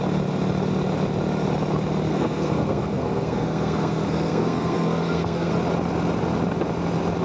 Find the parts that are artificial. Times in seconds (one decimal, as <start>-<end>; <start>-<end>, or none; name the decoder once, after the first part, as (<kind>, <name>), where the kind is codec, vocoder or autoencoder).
2.1-5.5 (codec, SNAC)